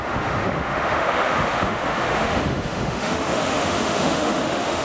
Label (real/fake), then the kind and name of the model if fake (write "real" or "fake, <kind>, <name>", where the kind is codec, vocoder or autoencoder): fake, autoencoder, DAC-VAE